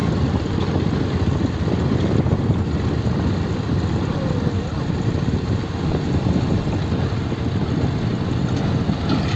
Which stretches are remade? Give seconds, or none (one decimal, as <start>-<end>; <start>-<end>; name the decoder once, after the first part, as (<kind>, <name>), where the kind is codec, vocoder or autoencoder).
none